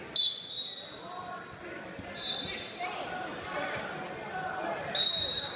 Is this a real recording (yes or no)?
yes